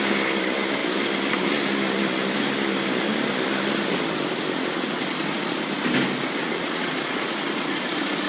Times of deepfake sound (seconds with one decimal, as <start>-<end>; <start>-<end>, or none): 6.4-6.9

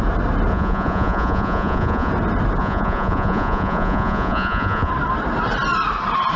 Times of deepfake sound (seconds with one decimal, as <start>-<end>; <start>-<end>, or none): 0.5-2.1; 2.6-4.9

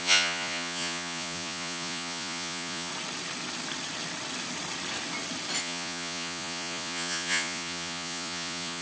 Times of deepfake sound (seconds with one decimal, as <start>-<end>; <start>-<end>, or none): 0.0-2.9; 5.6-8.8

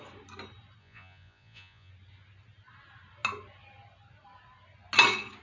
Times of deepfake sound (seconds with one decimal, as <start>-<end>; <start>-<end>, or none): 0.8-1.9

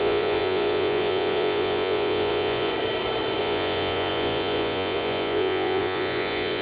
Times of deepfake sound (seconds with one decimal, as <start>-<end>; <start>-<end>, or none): 0.0-2.7; 3.4-6.6

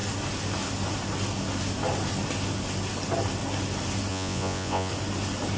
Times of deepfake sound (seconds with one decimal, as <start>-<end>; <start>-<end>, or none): 4.1-4.9